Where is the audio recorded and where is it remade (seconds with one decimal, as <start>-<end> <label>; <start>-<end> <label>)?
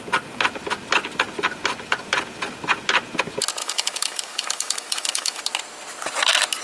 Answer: 0.0-3.6 recorded; 3.6-5.4 remade; 5.4-6.6 recorded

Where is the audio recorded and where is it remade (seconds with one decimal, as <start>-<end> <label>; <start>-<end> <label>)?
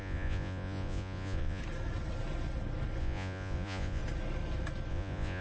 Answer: 0.0-1.6 remade; 1.6-3.0 recorded; 3.0-4.0 remade; 4.0-4.9 recorded; 4.9-5.4 remade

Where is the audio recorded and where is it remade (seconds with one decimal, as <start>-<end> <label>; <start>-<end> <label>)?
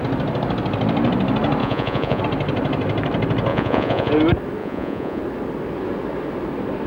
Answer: 0.0-1.6 recorded; 1.6-2.2 remade; 2.2-3.5 recorded; 3.5-4.1 remade; 4.1-4.6 recorded; 4.6-5.2 remade; 5.2-6.9 recorded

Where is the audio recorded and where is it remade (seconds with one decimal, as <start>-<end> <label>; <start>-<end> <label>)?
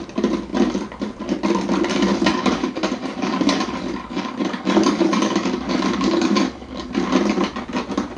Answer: 0.0-2.1 recorded; 2.1-6.9 remade; 6.9-8.2 recorded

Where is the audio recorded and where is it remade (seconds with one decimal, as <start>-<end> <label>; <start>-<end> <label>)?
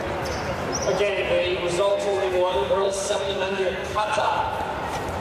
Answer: 0.0-1.9 recorded; 1.9-4.4 remade; 4.4-5.2 recorded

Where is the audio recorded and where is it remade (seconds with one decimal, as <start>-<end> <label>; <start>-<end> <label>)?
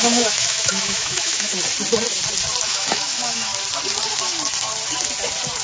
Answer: 0.0-1.5 remade; 1.5-2.6 recorded; 2.6-3.5 remade; 3.5-5.6 recorded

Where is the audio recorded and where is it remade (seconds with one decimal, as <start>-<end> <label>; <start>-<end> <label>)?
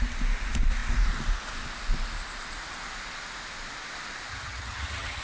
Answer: 0.0-4.3 recorded; 4.3-5.2 remade